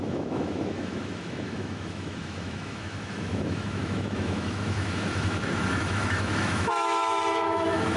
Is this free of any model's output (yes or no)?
no